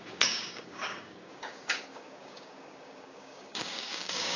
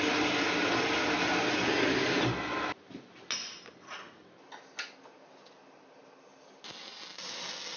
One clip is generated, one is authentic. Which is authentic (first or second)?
second